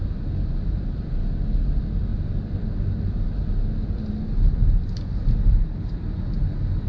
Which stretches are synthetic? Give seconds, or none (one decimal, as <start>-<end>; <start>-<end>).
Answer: none